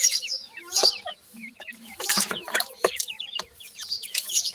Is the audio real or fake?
fake